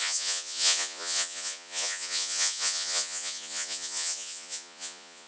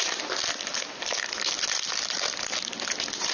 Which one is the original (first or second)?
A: second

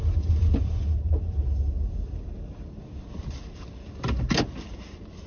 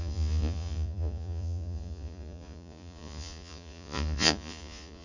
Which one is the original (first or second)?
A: first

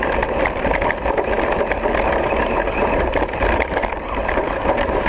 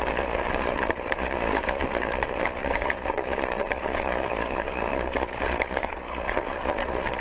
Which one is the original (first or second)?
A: first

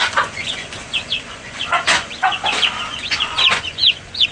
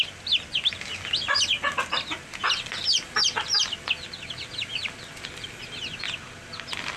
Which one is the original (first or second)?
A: second